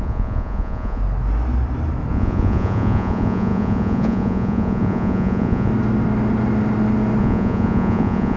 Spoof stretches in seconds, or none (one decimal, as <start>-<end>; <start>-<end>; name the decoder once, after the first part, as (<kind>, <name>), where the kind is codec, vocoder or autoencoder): 0.0-1.0 (vocoder, Vocos); 2.1-5.7; 7.2-8.4